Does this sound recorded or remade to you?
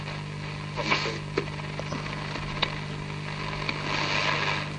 recorded